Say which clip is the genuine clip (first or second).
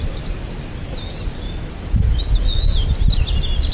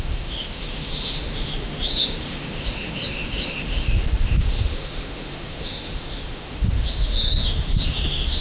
first